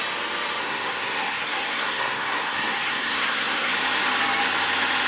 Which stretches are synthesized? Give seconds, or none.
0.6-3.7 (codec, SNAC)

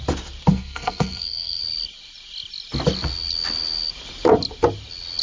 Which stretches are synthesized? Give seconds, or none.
0.5-1.6 (codec, SNAC)

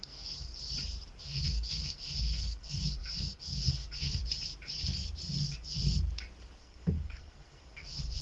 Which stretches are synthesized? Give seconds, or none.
0.0-0.5 (codec, SNAC); 1.2-4.2; 6.6-8.2

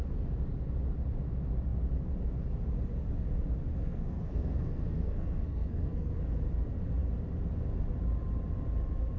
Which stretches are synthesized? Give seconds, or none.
3.7-6.1 (codec, SNAC)